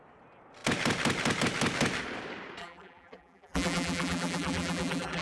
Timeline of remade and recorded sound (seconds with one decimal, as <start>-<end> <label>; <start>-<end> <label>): 0.0-2.6 recorded; 2.6-5.2 remade

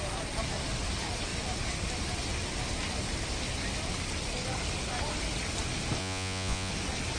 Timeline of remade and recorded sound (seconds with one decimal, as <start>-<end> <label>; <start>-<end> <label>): 0.0-6.0 recorded; 6.0-6.7 remade; 6.7-7.2 recorded

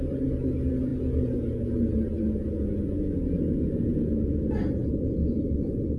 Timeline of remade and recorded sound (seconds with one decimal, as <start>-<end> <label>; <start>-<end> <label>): 0.0-6.0 recorded

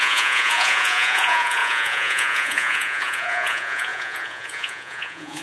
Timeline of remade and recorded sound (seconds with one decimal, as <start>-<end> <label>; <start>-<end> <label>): 0.0-5.4 remade

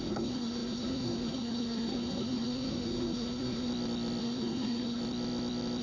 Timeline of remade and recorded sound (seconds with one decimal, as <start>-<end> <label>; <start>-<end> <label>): 0.0-3.7 remade; 3.7-4.2 recorded; 4.2-5.0 remade; 5.0-5.8 recorded

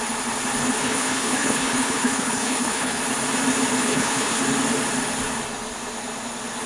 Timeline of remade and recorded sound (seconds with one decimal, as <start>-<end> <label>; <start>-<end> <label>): 0.0-0.6 recorded; 0.6-3.0 remade; 3.0-3.8 recorded; 3.8-4.4 remade; 4.4-6.7 recorded